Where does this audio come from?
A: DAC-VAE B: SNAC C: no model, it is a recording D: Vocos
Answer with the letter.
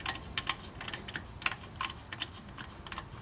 C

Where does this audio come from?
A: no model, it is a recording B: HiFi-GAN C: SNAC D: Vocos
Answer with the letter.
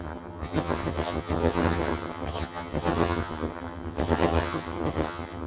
B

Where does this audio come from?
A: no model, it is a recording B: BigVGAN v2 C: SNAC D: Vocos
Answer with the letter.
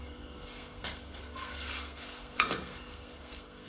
C